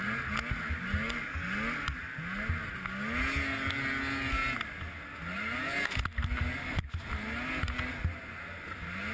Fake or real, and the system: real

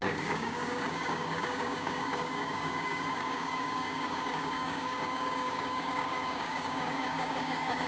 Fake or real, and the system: fake, codec, DAC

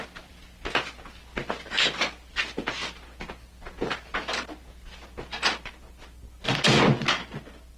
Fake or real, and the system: real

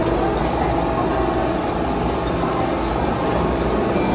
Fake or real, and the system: real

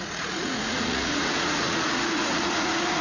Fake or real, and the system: fake, vocoder, Vocos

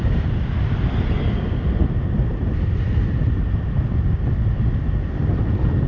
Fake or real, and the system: real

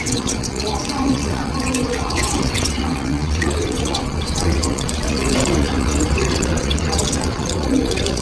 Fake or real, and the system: fake, vocoder, WaveNeXt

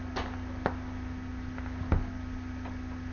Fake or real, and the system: real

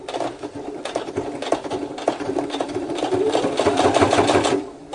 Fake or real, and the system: real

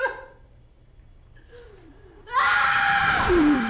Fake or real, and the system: fake, vocoder, BigVGAN v2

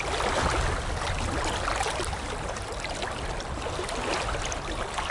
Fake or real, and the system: real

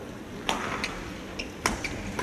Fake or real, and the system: real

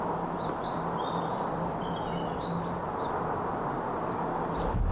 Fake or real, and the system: real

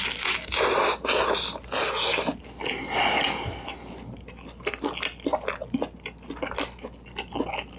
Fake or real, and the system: real